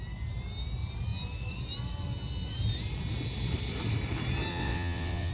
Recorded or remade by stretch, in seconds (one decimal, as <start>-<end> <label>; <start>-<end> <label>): 0.0-4.5 recorded; 4.5-5.3 remade